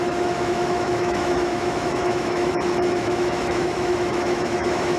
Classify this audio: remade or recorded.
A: remade